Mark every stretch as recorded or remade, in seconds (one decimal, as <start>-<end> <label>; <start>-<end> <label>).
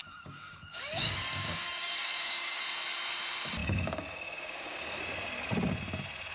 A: 0.0-2.6 remade; 2.6-3.6 recorded; 3.6-5.0 remade; 5.0-6.3 recorded